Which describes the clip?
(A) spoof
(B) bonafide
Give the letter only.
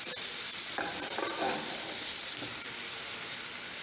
A